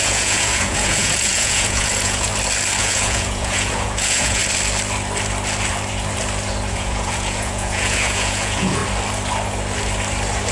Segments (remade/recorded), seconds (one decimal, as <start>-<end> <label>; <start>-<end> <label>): 0.0-2.3 remade; 2.3-2.8 recorded; 2.8-4.4 remade; 4.4-6.7 recorded; 6.7-8.8 remade; 8.8-10.5 recorded